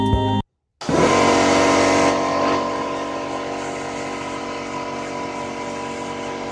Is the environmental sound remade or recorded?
recorded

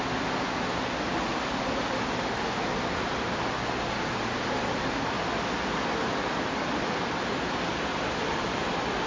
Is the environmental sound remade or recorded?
recorded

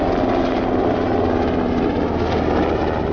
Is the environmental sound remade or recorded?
recorded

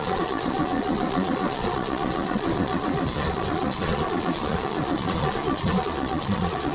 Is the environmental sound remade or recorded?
remade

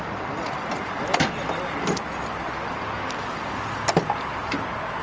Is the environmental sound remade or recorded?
recorded